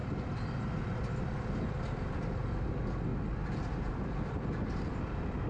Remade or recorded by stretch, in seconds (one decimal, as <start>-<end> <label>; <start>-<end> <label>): 0.0-5.5 recorded